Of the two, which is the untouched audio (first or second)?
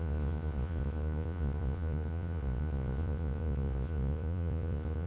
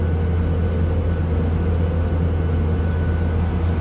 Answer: second